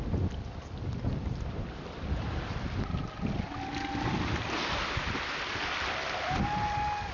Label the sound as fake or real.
real